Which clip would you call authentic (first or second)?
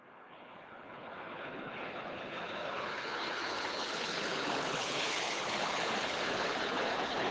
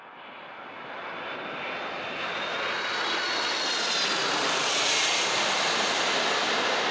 second